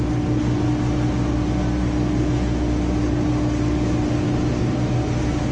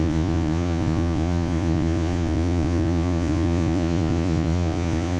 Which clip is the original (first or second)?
first